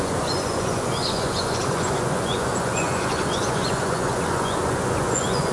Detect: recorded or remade remade